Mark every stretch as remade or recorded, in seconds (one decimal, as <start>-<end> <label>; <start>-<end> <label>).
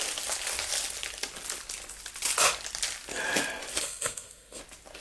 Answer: 0.0-3.8 recorded; 3.8-4.6 remade; 4.6-5.0 recorded